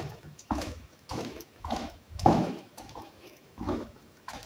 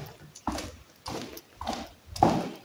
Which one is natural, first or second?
second